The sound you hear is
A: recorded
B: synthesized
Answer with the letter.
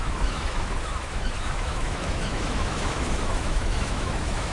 B